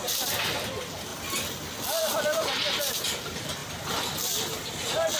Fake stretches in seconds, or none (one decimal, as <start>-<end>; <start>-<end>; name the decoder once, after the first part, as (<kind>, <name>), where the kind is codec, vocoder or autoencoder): 0.0-1.1 (vocoder, BigVGAN v2); 2.0-5.2